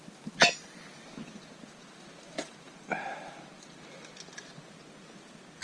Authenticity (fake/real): real